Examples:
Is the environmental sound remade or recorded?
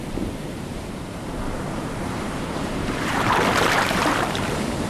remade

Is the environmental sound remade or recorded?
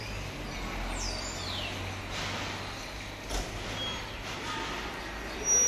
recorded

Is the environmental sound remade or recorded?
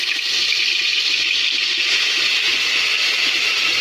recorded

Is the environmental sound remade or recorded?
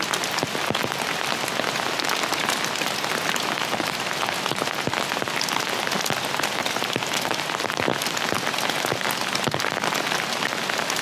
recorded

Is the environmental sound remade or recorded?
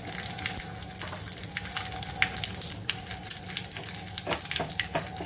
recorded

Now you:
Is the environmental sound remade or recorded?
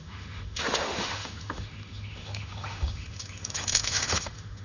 remade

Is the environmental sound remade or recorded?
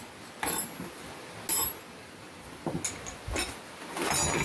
recorded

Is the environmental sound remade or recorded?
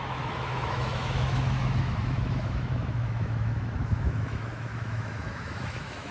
remade